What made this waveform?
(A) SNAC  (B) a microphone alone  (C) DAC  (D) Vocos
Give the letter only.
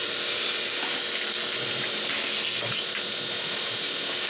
B